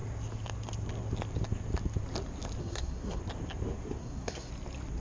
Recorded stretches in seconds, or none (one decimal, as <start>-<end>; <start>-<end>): 0.0-2.6; 3.2-4.0; 4.5-5.0